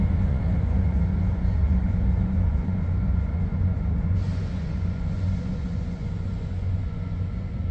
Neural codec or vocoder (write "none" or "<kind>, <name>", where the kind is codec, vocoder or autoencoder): vocoder, Vocos